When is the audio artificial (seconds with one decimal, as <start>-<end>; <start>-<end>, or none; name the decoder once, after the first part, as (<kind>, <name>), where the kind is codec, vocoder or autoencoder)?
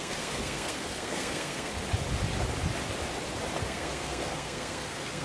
0.0-1.7 (codec, SNAC); 3.6-5.2